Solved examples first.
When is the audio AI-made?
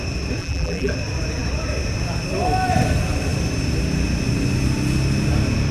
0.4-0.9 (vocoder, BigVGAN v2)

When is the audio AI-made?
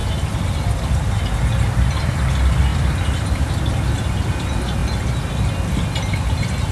0.0-2.3 (vocoder, BigVGAN v2); 2.7-3.5; 4.8-5.5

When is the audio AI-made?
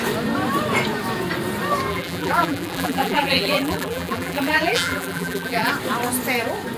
1.9-5.7 (vocoder, BigVGAN v2)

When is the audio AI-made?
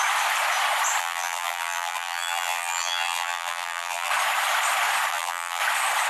1.0-4.1 (vocoder, BigVGAN v2); 5.1-5.6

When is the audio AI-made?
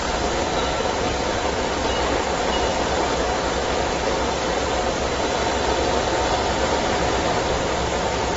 none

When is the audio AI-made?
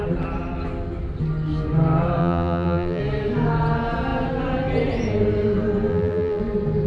2.2-3.0 (vocoder, BigVGAN v2); 5.9-6.4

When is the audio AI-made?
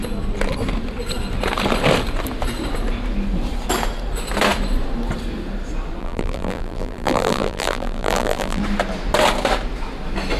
6.0-8.6 (vocoder, BigVGAN v2)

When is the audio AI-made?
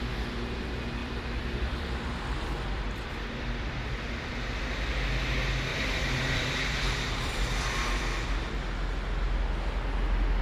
1.0-4.3 (vocoder, BigVGAN v2); 5.7-7.7